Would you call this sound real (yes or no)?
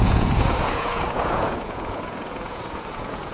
no